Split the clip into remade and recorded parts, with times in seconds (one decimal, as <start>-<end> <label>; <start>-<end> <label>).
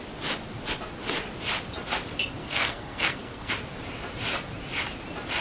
0.0-2.4 recorded; 2.4-3.5 remade; 3.5-5.4 recorded